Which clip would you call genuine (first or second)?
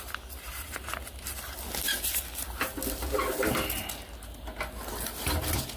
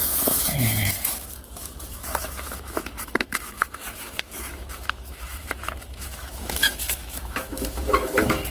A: first